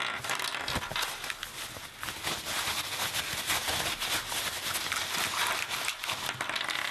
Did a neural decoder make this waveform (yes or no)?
no